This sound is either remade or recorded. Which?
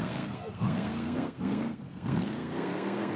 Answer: remade